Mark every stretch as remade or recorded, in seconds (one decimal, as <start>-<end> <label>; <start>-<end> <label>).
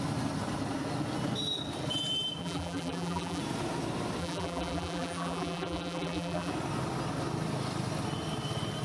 0.0-2.4 recorded; 2.4-3.4 remade; 3.4-4.2 recorded; 4.2-6.5 remade; 6.5-8.8 recorded